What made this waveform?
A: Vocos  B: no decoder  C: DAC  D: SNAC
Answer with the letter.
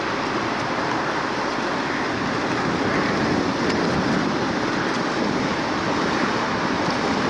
B